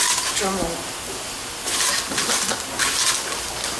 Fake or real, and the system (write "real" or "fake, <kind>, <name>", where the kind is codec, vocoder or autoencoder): real